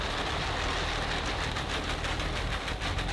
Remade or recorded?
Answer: recorded